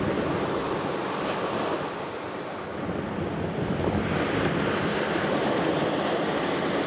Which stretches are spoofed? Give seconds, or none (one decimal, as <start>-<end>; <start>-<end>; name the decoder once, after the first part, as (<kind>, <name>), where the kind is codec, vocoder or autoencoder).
none